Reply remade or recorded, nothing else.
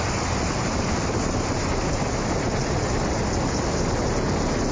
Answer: recorded